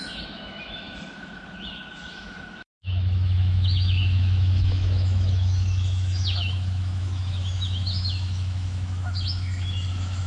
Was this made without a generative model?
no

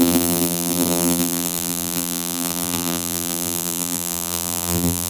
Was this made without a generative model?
no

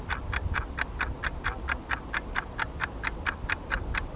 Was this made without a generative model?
yes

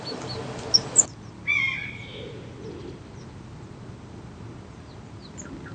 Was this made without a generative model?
yes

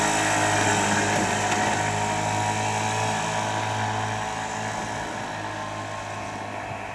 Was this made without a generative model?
yes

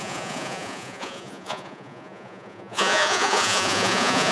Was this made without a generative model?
no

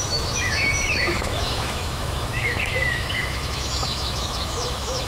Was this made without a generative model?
no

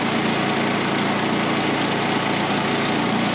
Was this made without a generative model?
yes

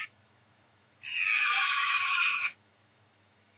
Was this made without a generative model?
no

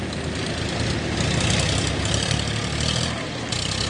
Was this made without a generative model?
yes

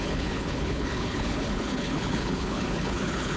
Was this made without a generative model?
no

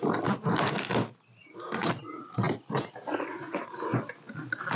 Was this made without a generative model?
yes